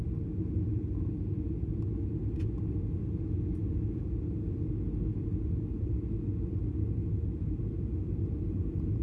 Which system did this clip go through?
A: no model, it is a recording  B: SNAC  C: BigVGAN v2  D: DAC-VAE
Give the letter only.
A